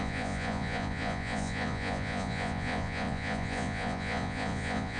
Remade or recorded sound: remade